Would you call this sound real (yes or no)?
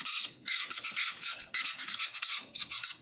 no